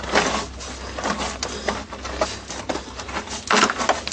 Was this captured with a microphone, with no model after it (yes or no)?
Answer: yes